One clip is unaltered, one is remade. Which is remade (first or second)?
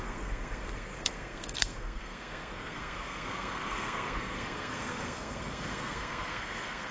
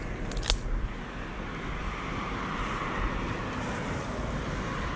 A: first